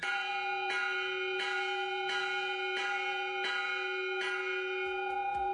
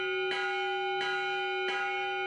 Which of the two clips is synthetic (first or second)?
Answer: first